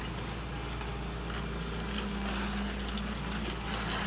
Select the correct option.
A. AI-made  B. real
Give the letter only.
B